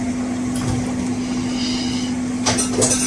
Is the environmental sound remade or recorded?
recorded